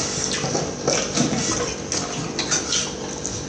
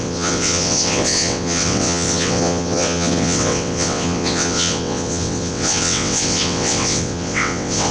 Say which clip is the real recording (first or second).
first